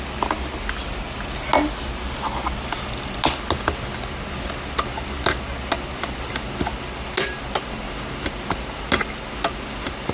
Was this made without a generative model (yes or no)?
yes